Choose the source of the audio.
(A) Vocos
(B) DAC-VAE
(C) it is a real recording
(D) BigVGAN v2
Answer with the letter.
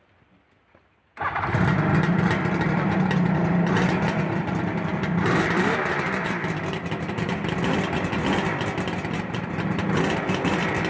D